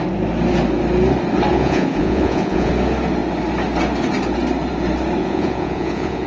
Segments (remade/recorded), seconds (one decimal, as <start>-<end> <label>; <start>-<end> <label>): 0.0-1.5 recorded; 1.5-2.7 remade; 2.7-5.2 recorded; 5.2-6.3 remade